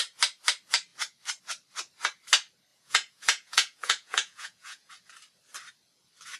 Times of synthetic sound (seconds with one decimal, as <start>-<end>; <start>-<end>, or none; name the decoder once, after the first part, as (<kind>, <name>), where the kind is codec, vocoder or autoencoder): 2.7-4.9 (vocoder, Vocos)